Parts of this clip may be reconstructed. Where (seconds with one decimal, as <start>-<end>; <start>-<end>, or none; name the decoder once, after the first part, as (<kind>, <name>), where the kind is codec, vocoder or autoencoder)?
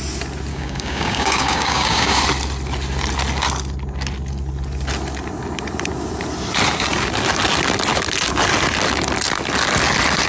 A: 0.5-2.2 (codec, DAC)